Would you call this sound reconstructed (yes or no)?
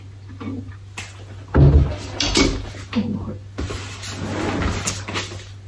no